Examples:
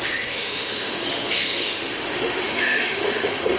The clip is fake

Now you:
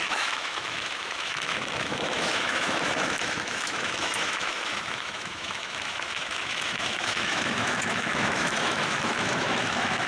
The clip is fake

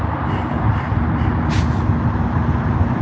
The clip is real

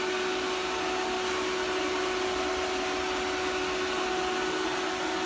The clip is real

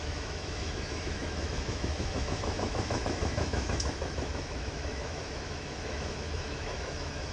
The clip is fake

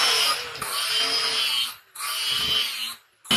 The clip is real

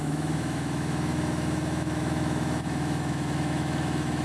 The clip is fake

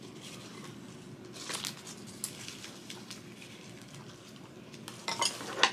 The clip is real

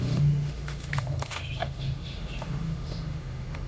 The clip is fake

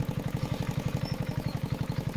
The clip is fake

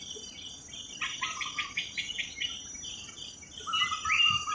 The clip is real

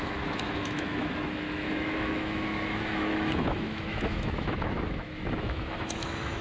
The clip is fake